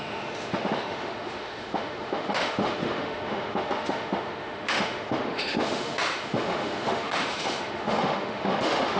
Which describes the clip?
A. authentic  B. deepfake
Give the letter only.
B